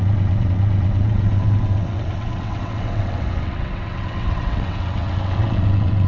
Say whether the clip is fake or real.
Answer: fake